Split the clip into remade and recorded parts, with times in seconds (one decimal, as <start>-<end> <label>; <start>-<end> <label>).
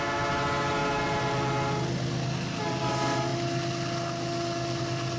0.0-5.2 recorded